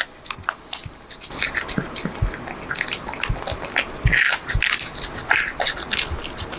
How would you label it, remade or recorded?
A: recorded